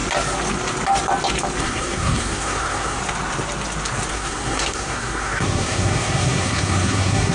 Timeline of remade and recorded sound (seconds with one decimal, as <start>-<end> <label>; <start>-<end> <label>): 0.0-1.6 recorded; 1.6-3.0 remade; 3.0-4.1 recorded; 4.1-7.3 remade